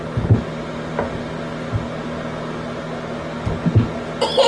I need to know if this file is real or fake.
real